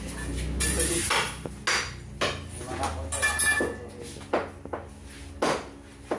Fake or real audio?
real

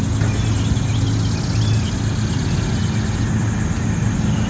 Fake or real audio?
real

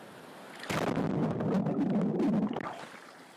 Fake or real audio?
real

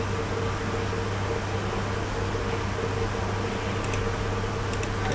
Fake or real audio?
real